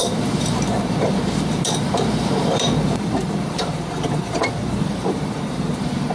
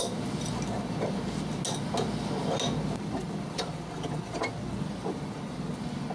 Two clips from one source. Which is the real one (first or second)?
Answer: second